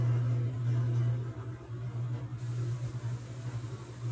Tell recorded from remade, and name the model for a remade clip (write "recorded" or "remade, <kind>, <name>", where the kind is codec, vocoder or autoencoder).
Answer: recorded